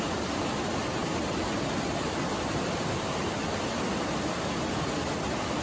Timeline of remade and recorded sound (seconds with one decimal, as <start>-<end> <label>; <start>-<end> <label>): 0.0-5.6 recorded